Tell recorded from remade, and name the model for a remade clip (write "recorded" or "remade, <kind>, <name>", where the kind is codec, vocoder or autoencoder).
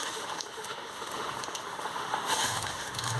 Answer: remade, autoencoder, DAC-VAE